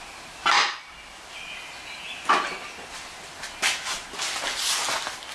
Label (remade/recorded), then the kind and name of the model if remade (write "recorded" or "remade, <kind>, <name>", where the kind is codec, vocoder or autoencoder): recorded